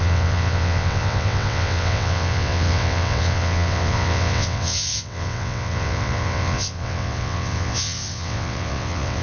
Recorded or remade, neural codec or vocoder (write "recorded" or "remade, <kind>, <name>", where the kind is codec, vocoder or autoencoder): remade, vocoder, WaveNeXt